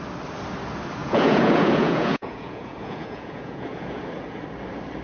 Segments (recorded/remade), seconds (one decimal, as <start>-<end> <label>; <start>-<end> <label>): 0.0-1.0 recorded; 1.0-4.0 remade; 4.0-5.0 recorded